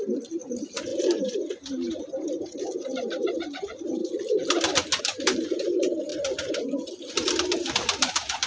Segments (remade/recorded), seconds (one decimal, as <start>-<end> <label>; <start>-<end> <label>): 0.0-4.0 remade; 4.0-5.0 recorded; 5.0-8.5 remade